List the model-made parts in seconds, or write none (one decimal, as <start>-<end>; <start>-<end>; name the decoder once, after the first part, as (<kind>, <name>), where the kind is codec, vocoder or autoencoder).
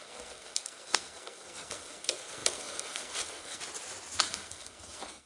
0.0-3.6 (codec, SNAC); 4.2-5.3